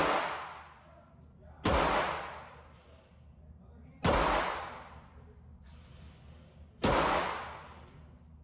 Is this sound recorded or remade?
recorded